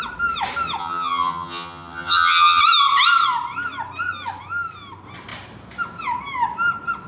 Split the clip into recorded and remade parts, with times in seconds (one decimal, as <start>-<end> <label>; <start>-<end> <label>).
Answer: 0.0-0.8 recorded; 0.8-2.6 remade; 2.6-7.1 recorded